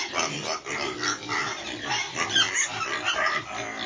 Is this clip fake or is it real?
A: real